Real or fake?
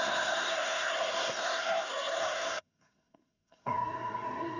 fake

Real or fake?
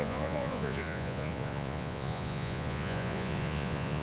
fake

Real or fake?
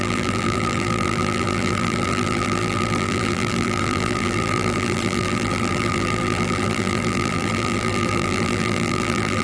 fake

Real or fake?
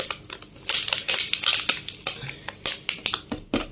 real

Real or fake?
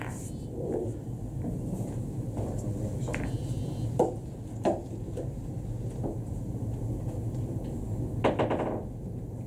real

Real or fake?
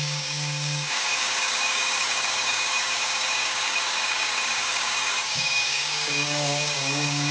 fake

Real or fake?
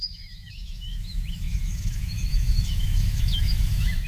fake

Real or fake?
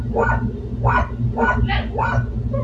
real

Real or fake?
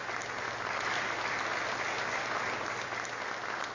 real